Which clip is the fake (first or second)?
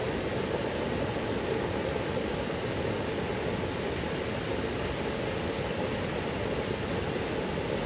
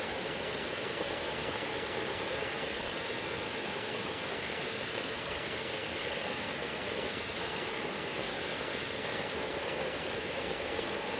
second